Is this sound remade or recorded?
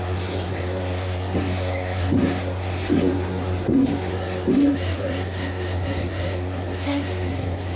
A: remade